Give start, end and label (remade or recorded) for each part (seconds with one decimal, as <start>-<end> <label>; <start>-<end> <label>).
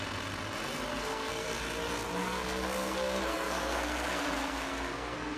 0.0-0.9 recorded; 0.9-1.6 remade; 1.6-2.2 recorded; 2.2-5.4 remade